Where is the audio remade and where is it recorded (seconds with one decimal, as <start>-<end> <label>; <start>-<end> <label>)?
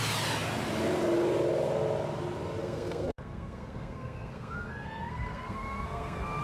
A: 0.0-2.6 recorded; 2.6-6.4 remade